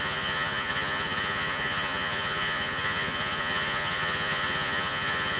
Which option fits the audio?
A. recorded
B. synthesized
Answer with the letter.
B